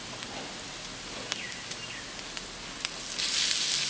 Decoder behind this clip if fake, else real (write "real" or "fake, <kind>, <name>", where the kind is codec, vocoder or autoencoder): real